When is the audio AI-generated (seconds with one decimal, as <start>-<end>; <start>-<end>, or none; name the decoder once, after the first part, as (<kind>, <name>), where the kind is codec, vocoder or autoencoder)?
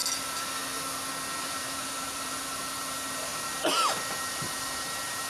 1.4-5.3 (vocoder, BigVGAN v2)